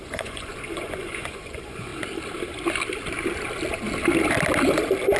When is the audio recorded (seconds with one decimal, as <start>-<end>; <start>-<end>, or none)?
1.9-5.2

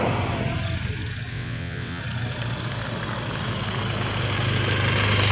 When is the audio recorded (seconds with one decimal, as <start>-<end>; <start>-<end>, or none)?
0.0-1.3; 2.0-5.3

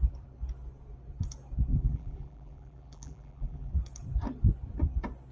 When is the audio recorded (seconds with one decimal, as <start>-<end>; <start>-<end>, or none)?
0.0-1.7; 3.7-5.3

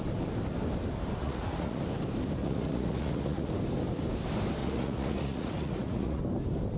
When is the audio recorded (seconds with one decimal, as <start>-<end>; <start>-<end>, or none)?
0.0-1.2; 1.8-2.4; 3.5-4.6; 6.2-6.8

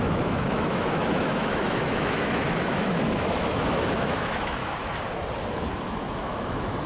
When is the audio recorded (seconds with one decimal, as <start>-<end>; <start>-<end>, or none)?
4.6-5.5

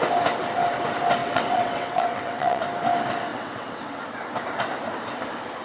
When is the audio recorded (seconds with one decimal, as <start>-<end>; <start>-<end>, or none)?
0.0-1.2; 2.6-3.3; 4.0-5.6

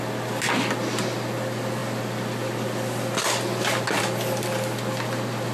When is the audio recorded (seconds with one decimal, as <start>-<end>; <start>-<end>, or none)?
0.0-5.5